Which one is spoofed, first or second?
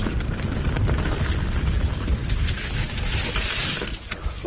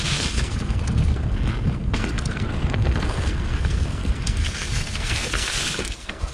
second